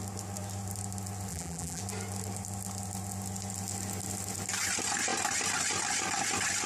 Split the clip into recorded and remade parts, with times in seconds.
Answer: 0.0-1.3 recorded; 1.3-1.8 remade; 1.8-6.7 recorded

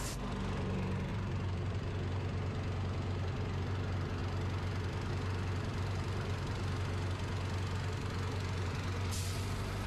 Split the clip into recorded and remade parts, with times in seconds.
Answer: 0.0-1.1 recorded; 1.1-1.9 remade; 1.9-5.7 recorded; 5.7-6.6 remade; 6.6-9.9 recorded

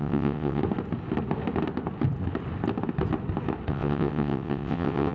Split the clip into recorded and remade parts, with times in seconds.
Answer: 0.0-0.6 remade; 0.6-3.7 recorded; 3.7-5.1 remade

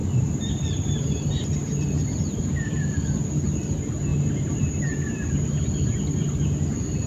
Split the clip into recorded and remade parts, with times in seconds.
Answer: 0.0-2.4 remade; 2.4-7.1 recorded

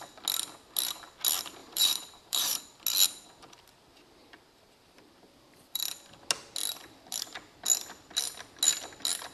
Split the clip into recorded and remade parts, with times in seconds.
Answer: 0.0-1.6 recorded; 1.6-2.6 remade; 2.6-4.2 recorded; 4.2-5.8 remade; 5.8-9.3 recorded

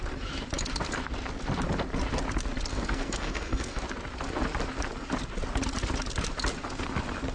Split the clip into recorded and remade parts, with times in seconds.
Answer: 0.0-2.7 recorded; 2.7-3.8 remade; 3.8-7.3 recorded

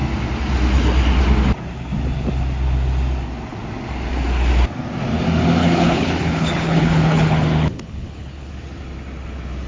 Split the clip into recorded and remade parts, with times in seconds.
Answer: 0.0-5.6 recorded; 5.6-8.5 remade; 8.5-9.7 recorded

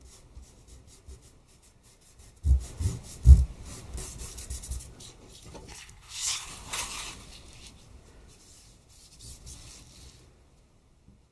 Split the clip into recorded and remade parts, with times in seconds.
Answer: 0.0-5.7 recorded; 5.7-6.5 remade; 6.5-11.3 recorded